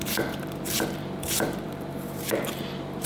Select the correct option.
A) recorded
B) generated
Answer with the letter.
B